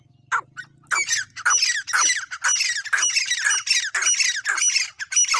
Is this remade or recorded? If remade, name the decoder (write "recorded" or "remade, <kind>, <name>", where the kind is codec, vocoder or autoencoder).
recorded